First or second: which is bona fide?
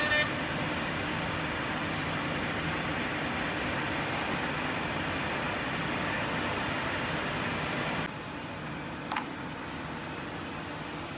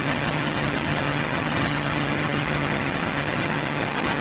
first